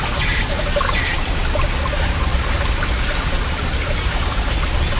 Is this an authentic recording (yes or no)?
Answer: yes